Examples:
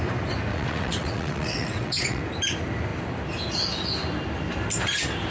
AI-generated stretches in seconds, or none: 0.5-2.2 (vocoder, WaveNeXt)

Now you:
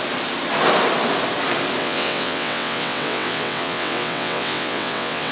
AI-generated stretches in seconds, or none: 1.8-5.3 (vocoder, WaveNeXt)